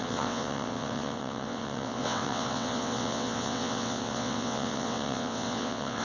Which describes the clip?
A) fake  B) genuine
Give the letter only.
A